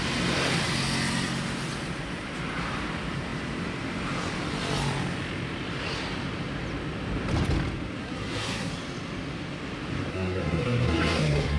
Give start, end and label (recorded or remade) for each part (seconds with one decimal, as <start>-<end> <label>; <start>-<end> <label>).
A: 0.0-8.0 recorded; 8.0-8.7 remade; 8.7-10.1 recorded; 10.1-11.6 remade